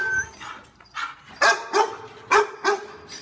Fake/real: real